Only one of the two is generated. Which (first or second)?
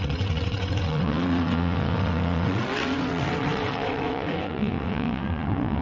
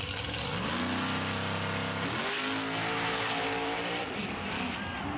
first